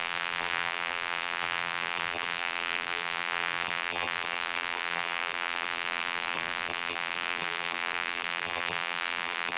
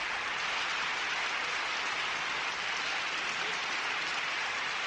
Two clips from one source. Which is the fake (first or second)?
first